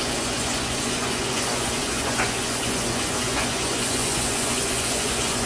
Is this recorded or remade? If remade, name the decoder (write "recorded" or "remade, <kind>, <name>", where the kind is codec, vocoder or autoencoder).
remade, vocoder, Vocos